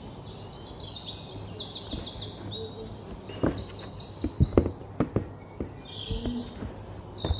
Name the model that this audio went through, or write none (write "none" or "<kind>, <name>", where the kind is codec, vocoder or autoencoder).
none